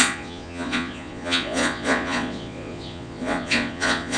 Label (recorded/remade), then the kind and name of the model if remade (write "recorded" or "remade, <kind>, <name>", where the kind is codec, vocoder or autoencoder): remade, vocoder, Vocos